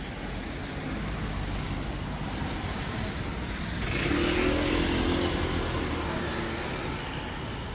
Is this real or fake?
real